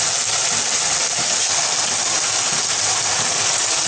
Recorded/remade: recorded